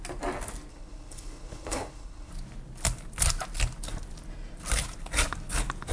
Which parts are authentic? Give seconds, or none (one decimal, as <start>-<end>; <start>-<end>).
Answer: 0.0-0.7; 2.3-5.9